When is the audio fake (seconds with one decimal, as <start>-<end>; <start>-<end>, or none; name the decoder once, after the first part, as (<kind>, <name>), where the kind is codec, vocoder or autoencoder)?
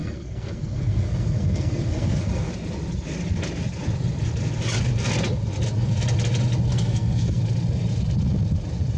0.0-2.5 (codec, SNAC); 6.7-7.4